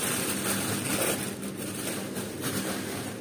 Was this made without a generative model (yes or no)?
yes